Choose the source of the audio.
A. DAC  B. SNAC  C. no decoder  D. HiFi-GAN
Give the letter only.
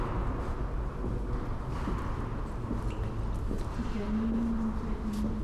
C